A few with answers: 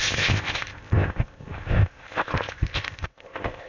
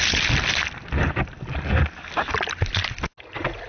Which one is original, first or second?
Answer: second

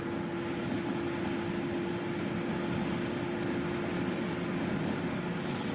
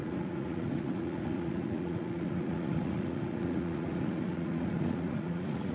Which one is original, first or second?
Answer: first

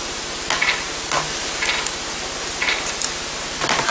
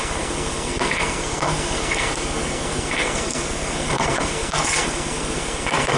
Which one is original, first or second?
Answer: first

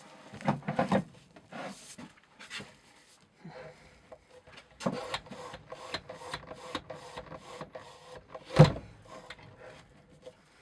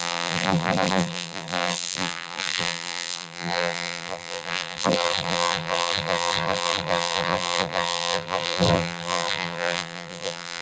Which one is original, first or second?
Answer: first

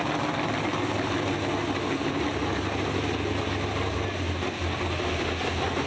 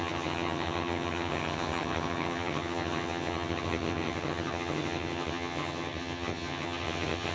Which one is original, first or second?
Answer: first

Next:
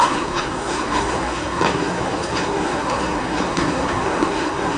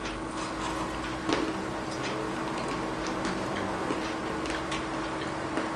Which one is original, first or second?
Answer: second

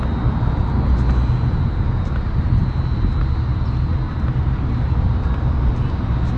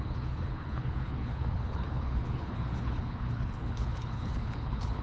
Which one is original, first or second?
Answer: first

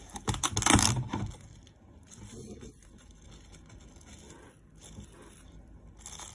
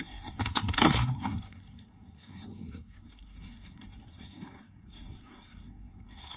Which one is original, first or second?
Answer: first